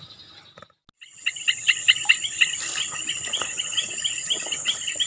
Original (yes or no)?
yes